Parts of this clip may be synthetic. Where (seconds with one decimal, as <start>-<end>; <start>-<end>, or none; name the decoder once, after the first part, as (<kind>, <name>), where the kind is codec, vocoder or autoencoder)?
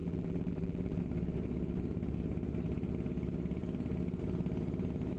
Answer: 0.0-1.0 (vocoder, BigVGAN v2)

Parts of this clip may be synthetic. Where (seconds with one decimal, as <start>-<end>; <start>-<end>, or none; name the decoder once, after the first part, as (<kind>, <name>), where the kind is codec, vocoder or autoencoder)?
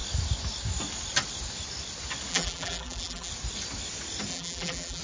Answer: 2.3-3.3 (vocoder, BigVGAN v2); 4.3-5.0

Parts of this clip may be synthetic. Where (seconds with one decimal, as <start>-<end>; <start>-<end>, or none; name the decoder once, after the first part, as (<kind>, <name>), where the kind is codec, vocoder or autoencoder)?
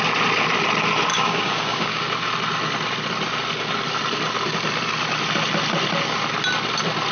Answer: 1.1-2.0 (codec, DAC)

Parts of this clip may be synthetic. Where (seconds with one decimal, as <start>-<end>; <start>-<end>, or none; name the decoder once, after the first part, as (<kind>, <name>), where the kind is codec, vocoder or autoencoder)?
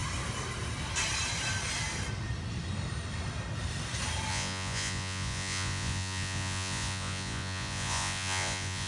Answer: 4.3-8.9 (vocoder, Vocos)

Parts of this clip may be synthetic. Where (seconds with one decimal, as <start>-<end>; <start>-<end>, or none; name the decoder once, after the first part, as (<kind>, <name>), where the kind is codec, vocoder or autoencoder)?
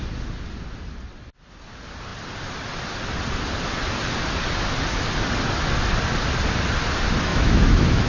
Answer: 7.3-8.1 (autoencoder, DAC-VAE)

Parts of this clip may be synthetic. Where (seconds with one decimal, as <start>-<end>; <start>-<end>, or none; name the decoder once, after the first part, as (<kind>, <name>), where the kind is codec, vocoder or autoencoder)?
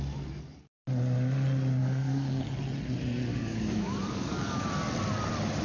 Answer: 1.8-2.4 (codec, DAC); 3.3-4.7